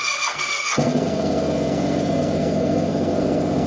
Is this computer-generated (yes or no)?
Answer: yes